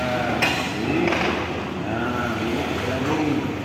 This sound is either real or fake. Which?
real